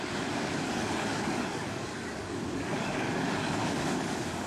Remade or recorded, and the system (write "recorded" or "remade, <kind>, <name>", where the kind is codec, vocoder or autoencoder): remade, codec, DAC